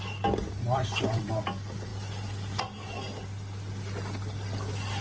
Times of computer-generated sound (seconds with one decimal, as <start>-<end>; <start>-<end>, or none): 0.4-1.3